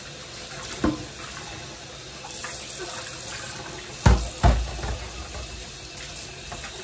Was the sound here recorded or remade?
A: recorded